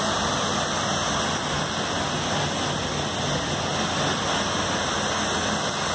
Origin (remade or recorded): recorded